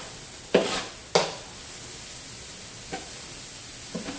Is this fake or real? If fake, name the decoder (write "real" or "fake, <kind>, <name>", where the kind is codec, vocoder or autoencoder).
real